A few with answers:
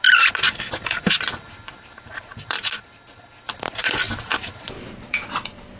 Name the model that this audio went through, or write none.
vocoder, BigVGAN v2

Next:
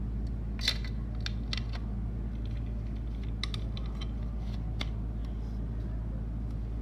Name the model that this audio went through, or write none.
none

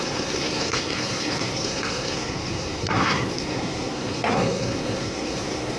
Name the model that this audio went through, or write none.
codec, SNAC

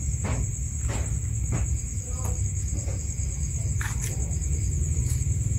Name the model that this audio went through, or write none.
none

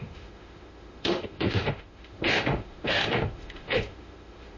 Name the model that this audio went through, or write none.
autoencoder, DAC-VAE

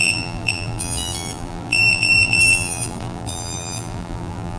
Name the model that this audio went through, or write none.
vocoder, BigVGAN v2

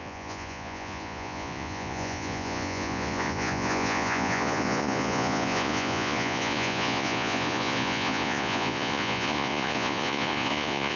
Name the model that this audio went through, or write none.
vocoder, Vocos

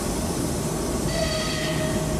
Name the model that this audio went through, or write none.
vocoder, BigVGAN v2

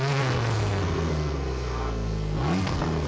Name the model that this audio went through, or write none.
codec, SNAC